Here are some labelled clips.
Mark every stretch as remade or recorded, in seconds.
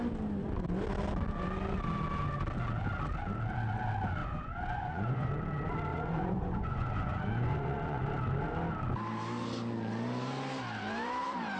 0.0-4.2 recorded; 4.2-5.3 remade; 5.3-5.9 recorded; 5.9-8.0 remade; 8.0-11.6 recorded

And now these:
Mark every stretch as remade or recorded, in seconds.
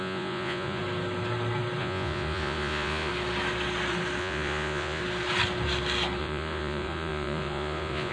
0.0-0.8 remade; 0.8-1.8 recorded; 1.8-3.1 remade; 3.1-4.2 recorded; 4.2-5.0 remade; 5.0-6.2 recorded; 6.2-8.1 remade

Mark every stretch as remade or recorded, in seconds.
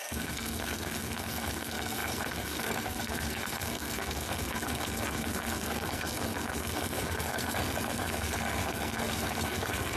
0.0-10.0 remade